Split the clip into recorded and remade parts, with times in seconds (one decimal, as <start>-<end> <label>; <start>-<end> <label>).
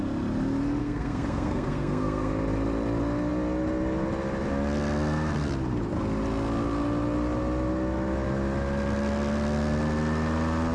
0.0-0.8 recorded; 0.8-2.3 remade; 2.3-10.7 recorded